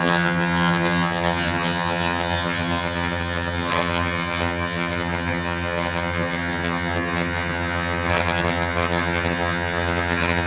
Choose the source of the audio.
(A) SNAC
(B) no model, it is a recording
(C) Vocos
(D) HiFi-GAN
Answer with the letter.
D